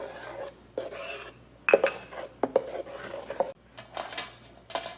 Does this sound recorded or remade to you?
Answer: recorded